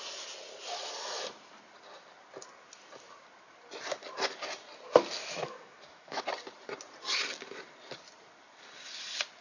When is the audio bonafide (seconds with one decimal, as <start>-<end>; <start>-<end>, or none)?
0.0-5.2; 6.2-9.4